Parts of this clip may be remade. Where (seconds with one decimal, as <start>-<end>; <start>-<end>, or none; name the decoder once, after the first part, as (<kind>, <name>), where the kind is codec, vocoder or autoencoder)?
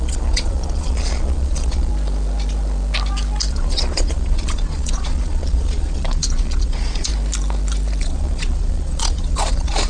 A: 0.0-1.9 (vocoder, Vocos); 3.5-7.1; 8.0-9.9